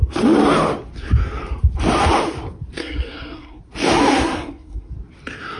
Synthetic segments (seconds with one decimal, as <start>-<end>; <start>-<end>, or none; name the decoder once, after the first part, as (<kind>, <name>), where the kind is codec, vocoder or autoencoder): 2.8-3.6 (codec, SNAC); 4.1-4.9